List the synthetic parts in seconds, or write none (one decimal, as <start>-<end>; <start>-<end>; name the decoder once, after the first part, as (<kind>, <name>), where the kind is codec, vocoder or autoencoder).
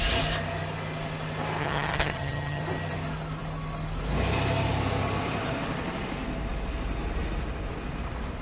1.6-2.6 (vocoder, HiFi-GAN)